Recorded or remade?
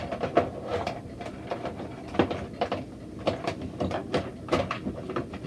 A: recorded